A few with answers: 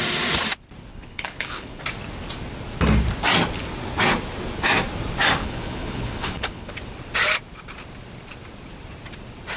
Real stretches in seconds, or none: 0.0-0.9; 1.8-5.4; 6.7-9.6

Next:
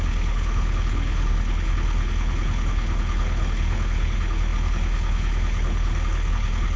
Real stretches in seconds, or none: none